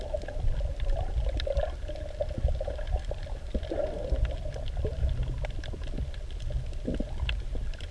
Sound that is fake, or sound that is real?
real